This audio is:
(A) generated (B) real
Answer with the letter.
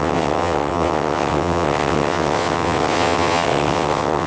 A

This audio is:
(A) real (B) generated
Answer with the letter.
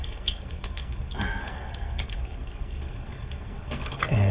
B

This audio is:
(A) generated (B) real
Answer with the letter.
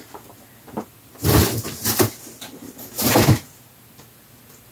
B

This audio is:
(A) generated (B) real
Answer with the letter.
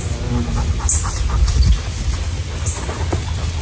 B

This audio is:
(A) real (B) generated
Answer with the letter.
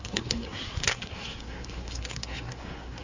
B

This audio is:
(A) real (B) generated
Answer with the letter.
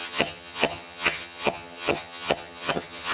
B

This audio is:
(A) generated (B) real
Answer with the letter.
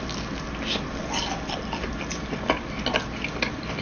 B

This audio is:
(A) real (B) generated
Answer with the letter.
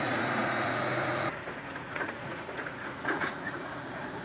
B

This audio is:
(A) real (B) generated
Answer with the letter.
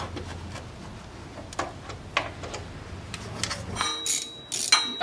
A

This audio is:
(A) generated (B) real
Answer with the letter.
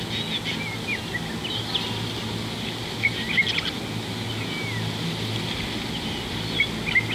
B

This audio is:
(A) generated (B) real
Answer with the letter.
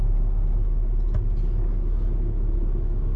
B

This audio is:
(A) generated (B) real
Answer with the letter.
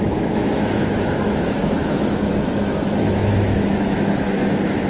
A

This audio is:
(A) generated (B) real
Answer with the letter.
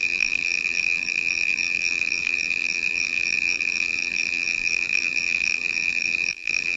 A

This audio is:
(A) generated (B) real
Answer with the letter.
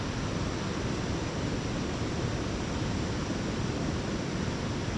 A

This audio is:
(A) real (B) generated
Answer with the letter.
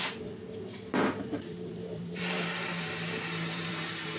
B